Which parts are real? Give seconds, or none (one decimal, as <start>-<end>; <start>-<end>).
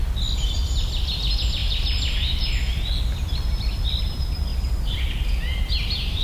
0.0-1.6; 4.0-6.2